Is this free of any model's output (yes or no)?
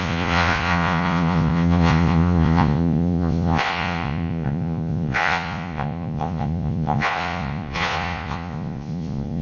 no